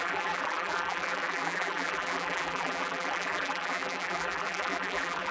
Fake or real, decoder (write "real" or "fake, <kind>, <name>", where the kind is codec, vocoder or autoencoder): fake, vocoder, BigVGAN v2